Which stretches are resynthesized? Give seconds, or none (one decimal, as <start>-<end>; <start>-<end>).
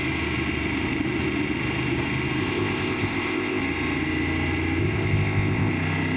2.4-3.6; 4.8-5.7